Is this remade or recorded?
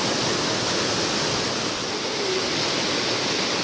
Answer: recorded